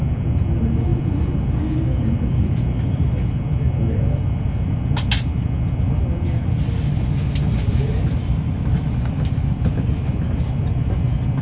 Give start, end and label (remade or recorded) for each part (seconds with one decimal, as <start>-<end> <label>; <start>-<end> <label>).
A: 0.0-8.2 recorded; 8.2-8.9 remade; 8.9-11.4 recorded